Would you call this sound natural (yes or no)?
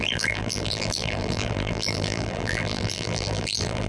no